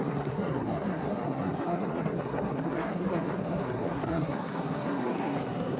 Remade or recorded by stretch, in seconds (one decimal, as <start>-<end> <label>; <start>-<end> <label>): 0.0-5.8 remade